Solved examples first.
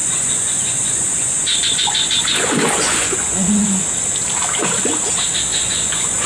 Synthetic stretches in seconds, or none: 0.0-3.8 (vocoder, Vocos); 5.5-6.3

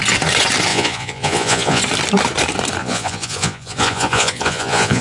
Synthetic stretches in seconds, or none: 0.7-1.8 (vocoder, Vocos); 2.8-5.0

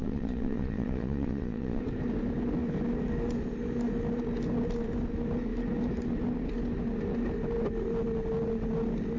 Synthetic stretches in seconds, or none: 0.0-1.8 (vocoder, Vocos)

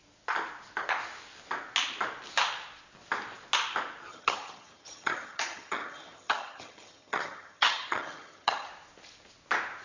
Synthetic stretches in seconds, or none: 4.1-8.7 (vocoder, HiFi-GAN)